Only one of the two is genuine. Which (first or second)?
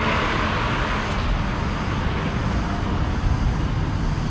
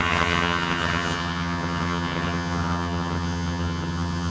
first